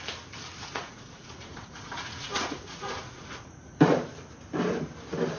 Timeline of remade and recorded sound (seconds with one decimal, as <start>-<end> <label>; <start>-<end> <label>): 0.0-0.6 recorded; 0.6-3.8 remade; 3.8-5.4 recorded